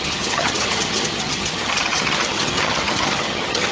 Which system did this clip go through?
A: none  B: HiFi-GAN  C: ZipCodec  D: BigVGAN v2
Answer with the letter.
B